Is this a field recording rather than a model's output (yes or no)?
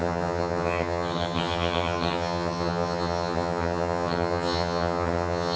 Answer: no